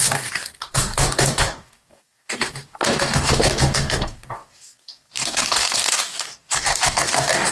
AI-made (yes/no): yes